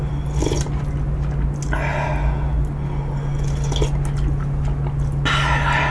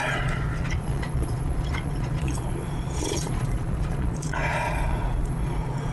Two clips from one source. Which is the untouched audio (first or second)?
first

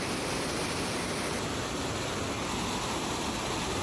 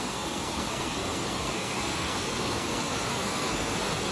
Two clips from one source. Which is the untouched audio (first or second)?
first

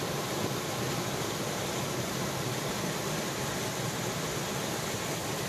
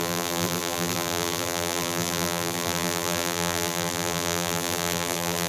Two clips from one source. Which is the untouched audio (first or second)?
first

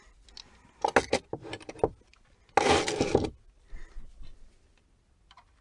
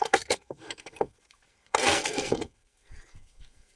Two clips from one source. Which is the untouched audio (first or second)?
first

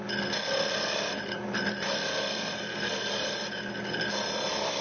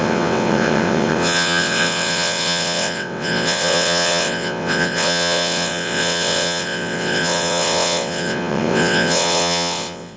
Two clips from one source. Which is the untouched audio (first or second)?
first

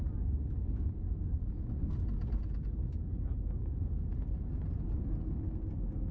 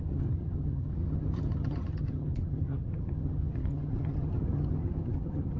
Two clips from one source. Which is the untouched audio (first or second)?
first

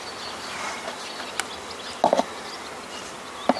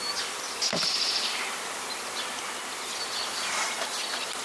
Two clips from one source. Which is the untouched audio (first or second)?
first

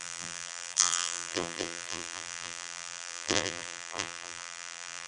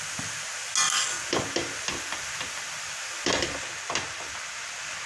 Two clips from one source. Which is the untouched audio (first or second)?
second